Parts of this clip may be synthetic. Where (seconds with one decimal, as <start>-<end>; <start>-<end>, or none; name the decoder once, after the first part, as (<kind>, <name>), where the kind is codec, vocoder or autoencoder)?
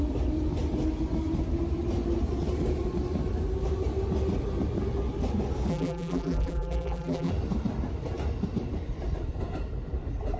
5.7-7.3 (vocoder, BigVGAN v2)